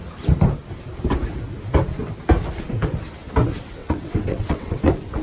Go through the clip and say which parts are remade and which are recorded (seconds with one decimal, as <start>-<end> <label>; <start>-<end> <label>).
0.0-3.8 recorded; 3.8-4.8 remade; 4.8-5.2 recorded

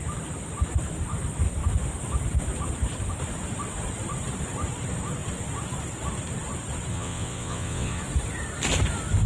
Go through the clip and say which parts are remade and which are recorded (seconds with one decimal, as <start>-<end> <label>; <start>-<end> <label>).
0.0-6.9 recorded; 6.9-8.0 remade; 8.0-9.3 recorded

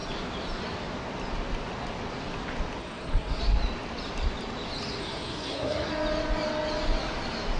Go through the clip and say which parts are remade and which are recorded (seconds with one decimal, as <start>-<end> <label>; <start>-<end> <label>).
0.0-2.8 recorded; 2.8-3.4 remade; 3.4-5.0 recorded; 5.0-5.9 remade; 5.9-7.6 recorded

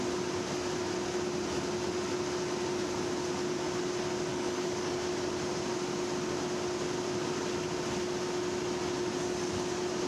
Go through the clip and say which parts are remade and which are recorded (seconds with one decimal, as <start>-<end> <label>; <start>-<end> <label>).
0.0-4.3 recorded; 4.3-4.9 remade; 4.9-10.1 recorded

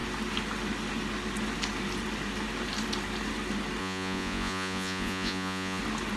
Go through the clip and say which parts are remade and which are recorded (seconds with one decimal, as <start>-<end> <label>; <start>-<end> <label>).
0.0-3.8 recorded; 3.8-5.8 remade; 5.8-6.2 recorded

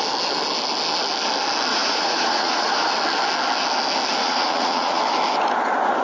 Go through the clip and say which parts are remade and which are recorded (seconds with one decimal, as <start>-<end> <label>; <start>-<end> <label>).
0.0-1.7 recorded; 1.7-2.9 remade; 2.9-4.2 recorded; 4.2-5.0 remade; 5.0-6.0 recorded

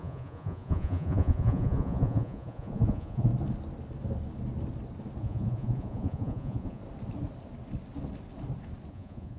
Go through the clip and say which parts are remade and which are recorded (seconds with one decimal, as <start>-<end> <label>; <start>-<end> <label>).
0.0-3.3 remade; 3.3-5.2 recorded; 5.2-6.8 remade; 6.8-8.9 recorded; 8.9-9.4 remade

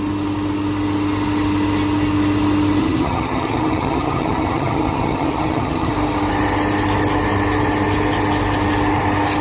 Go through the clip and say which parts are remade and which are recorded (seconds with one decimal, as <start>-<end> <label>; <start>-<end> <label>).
0.0-2.8 recorded; 2.8-5.9 remade; 5.9-9.4 recorded